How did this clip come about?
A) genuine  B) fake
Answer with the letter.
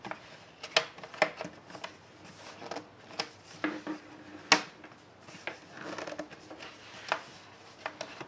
A